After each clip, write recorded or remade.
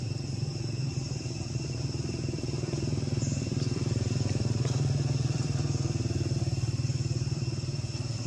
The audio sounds remade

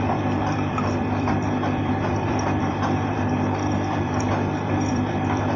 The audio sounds remade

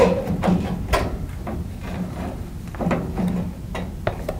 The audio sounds recorded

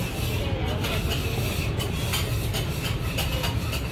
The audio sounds recorded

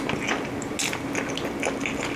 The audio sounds recorded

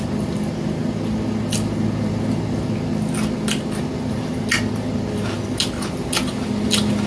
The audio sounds recorded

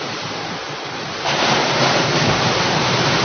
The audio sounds remade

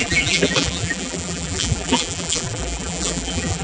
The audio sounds remade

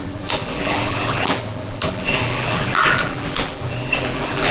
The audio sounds remade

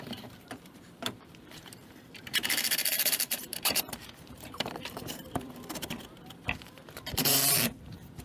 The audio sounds remade